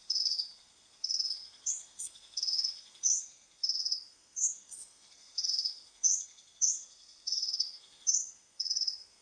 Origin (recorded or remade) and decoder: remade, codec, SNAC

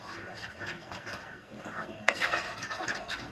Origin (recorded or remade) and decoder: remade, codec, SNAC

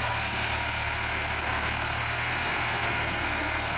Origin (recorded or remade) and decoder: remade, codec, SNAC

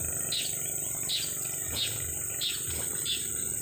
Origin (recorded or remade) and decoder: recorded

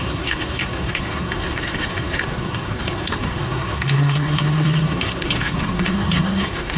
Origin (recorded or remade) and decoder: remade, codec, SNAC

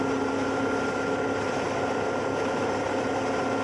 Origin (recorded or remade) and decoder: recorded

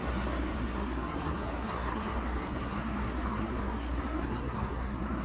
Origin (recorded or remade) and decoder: remade, codec, SNAC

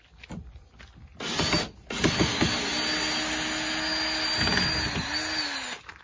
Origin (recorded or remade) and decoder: recorded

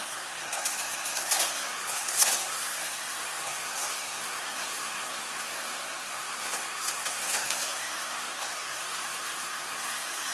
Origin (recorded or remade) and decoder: remade, codec, SNAC